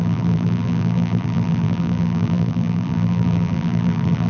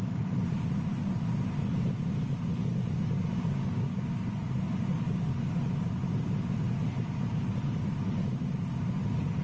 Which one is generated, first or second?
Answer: first